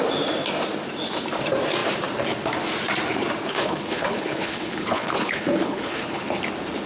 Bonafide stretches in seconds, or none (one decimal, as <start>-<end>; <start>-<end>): 0.0-3.5; 6.4-6.9